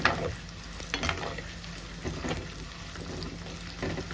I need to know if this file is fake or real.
real